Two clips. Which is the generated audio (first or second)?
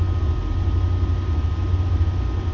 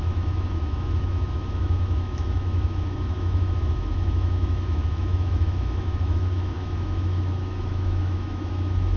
second